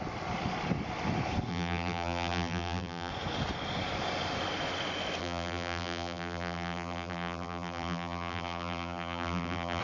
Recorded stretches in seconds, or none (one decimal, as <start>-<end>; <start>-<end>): 0.0-1.5; 3.1-5.2